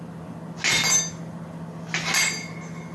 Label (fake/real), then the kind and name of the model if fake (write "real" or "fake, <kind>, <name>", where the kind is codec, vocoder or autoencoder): real